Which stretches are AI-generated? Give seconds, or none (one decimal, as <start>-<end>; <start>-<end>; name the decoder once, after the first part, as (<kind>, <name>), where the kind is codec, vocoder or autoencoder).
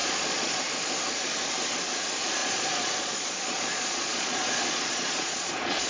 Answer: 0.0-0.6 (vocoder, Vocos); 2.4-5.9